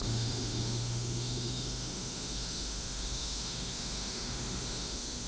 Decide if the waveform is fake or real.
fake